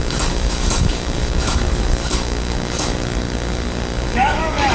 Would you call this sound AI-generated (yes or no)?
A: yes